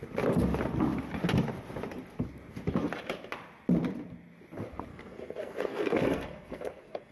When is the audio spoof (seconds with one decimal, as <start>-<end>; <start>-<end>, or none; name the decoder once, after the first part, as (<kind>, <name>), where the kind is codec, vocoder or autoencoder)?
4.9-7.1 (codec, SNAC)